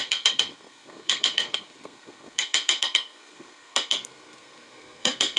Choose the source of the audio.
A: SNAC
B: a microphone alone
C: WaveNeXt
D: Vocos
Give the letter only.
A